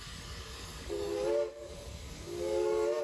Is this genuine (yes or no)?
no